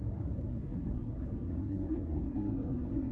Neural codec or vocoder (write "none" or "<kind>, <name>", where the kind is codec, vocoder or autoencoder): codec, SNAC